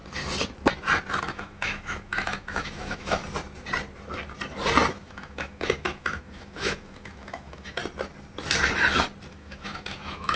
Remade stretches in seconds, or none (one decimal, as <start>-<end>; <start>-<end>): 1.2-3.2; 5.0-7.8; 9.3-10.4